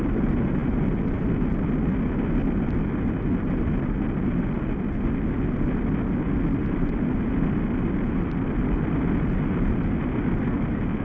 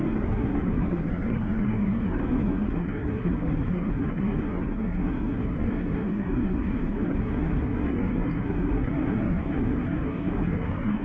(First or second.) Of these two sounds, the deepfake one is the second